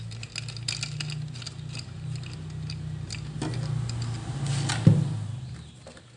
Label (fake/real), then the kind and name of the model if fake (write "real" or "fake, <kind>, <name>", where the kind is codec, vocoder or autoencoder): real